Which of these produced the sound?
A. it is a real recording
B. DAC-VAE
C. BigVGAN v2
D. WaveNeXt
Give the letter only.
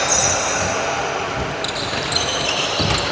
A